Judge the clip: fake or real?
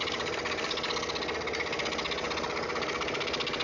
real